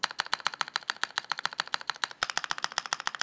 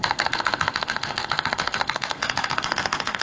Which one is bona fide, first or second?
first